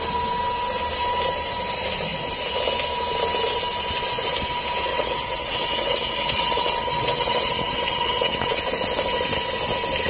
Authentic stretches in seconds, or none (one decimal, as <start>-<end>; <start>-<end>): 0.0-4.9; 8.6-10.1